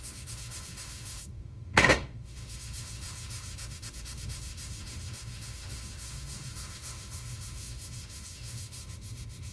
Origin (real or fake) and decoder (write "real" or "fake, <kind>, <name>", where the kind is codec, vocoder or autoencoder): fake, autoencoder, DAC-VAE